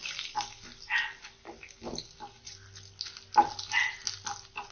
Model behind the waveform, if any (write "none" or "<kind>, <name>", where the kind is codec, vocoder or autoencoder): none